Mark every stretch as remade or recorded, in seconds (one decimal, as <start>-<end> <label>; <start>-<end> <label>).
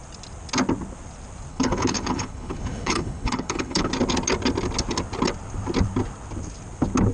0.0-1.5 recorded; 1.5-3.9 remade; 3.9-7.1 recorded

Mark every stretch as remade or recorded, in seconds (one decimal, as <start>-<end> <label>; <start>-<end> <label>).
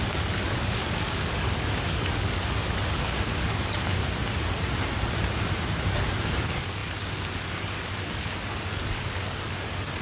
0.0-4.0 remade; 4.0-6.3 recorded; 6.3-10.0 remade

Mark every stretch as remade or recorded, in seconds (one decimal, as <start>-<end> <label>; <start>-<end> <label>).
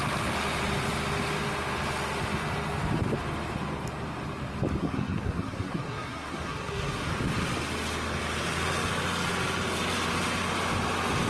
0.0-4.8 recorded; 4.8-7.1 remade; 7.1-11.3 recorded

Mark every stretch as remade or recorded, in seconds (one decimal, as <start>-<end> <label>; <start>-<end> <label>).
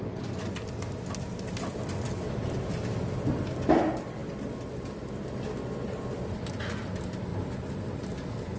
0.0-8.6 recorded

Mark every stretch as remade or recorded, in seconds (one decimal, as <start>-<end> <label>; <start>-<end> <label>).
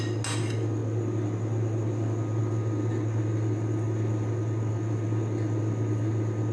0.0-6.5 recorded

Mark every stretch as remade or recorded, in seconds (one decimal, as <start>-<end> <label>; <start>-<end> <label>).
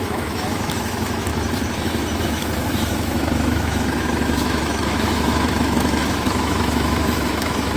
0.0-1.3 remade; 1.3-2.2 recorded; 2.2-7.8 remade